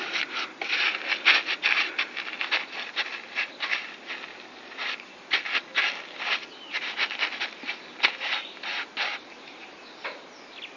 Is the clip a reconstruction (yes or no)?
no